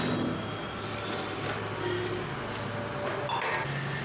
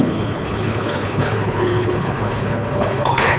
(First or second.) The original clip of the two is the first